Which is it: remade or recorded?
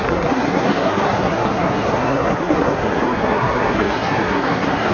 remade